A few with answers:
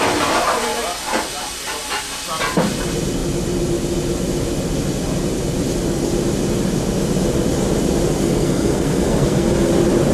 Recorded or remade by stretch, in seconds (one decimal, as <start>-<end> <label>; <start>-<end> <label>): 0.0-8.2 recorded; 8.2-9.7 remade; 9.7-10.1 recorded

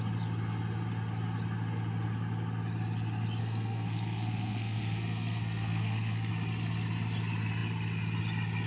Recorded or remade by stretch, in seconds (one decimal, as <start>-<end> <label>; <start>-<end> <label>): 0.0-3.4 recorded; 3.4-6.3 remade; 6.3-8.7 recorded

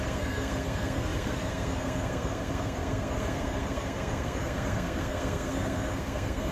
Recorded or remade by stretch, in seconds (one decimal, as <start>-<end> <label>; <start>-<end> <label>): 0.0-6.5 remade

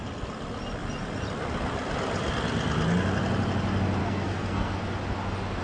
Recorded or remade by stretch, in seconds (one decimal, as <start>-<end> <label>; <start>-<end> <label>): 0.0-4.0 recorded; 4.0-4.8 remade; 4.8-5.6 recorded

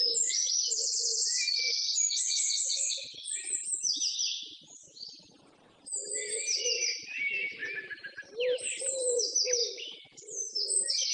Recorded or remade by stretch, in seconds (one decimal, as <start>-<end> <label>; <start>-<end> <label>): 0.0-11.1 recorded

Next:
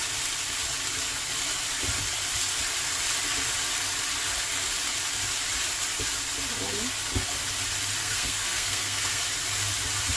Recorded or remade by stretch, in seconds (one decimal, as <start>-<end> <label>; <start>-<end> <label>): 0.0-8.0 recorded; 8.0-9.2 remade; 9.2-10.2 recorded